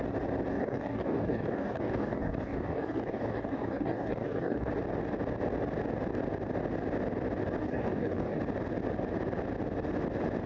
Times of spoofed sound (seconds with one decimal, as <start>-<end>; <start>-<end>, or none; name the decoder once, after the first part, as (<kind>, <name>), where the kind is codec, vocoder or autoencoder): 0.5-4.7 (codec, DAC); 7.6-8.4